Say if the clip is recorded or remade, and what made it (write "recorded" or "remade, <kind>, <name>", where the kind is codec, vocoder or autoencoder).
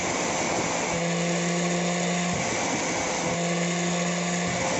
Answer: recorded